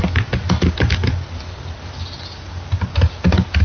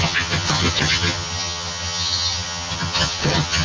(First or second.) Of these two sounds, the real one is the first